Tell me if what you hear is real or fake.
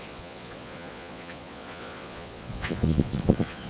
fake